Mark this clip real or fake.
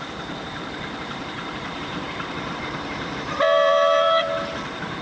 fake